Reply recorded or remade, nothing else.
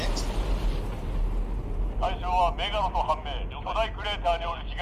recorded